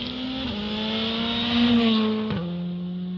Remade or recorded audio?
recorded